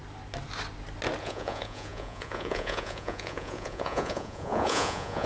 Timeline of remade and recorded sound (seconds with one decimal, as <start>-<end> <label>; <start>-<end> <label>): 0.0-1.2 recorded; 1.2-5.3 remade